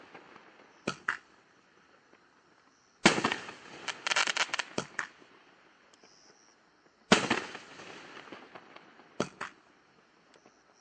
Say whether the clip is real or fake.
real